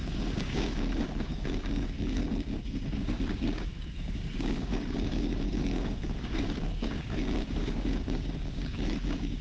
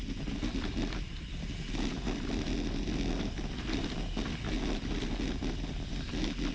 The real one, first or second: second